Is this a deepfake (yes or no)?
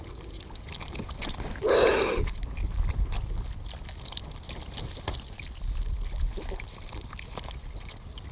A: no